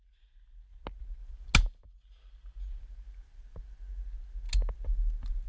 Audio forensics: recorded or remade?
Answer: recorded